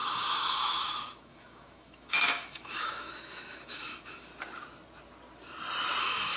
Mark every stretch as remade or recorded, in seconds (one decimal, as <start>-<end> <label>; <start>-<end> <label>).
0.0-4.3 remade; 4.3-6.0 recorded; 6.0-6.4 remade